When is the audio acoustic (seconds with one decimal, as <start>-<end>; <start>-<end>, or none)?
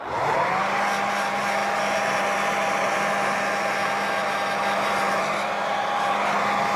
0.0-6.8